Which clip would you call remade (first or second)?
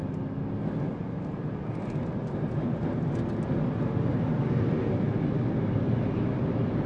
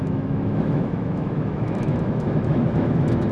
second